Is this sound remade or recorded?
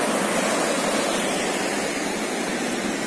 recorded